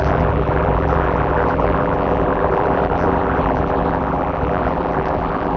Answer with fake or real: fake